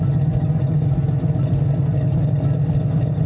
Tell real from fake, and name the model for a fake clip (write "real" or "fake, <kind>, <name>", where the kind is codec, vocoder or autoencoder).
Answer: real